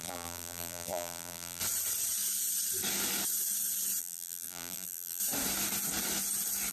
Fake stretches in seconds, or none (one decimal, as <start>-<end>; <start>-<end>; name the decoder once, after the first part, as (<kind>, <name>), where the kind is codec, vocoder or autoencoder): 0.0-1.6 (vocoder, BigVGAN v2); 4.0-5.2